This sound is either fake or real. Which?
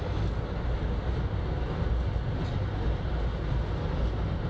real